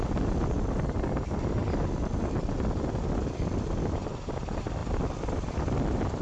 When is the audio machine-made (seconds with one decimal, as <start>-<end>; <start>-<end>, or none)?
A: none